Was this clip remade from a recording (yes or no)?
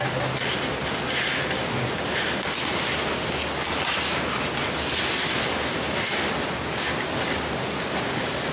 no